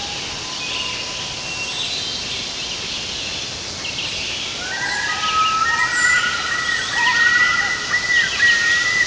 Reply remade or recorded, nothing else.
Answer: recorded